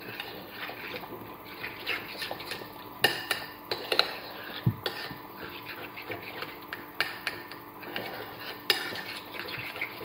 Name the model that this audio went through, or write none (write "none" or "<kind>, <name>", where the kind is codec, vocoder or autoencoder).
none